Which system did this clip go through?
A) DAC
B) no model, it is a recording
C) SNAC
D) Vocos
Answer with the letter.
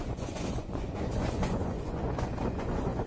D